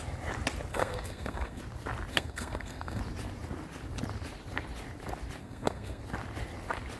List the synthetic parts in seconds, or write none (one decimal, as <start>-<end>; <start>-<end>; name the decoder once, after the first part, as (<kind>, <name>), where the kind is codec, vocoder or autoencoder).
0.7-1.6 (codec, SNAC); 2.1-3.0; 5.4-6.0